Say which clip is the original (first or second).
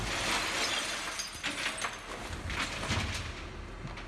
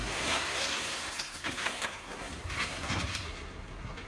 first